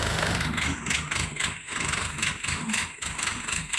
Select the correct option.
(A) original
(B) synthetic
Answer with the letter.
B